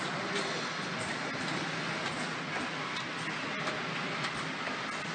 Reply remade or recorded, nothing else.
recorded